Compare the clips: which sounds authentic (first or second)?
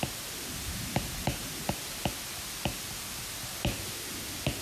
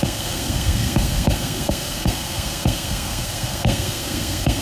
first